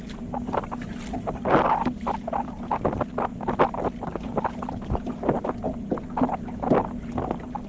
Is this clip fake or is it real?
real